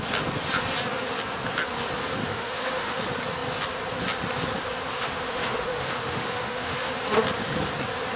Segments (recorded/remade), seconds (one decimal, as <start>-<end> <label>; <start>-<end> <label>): 0.0-2.2 recorded; 2.2-3.0 remade; 3.0-4.9 recorded; 4.9-6.9 remade; 6.9-8.2 recorded